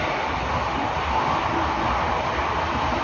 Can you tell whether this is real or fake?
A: real